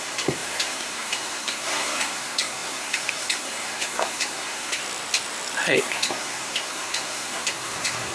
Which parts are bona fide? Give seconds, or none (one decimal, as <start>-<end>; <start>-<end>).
4.8-5.8